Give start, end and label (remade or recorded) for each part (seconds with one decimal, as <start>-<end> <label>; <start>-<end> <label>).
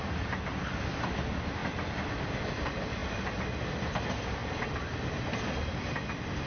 0.0-6.5 recorded